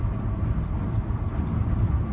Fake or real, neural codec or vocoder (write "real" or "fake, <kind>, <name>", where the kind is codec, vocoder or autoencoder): fake, vocoder, BigVGAN v2